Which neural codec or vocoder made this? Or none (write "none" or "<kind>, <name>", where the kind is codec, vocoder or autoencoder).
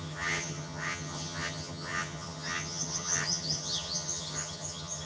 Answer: vocoder, HiFi-GAN